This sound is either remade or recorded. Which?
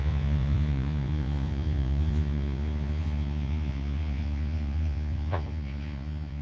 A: remade